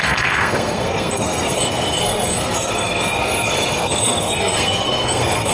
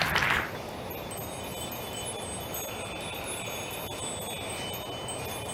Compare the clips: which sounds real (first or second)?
second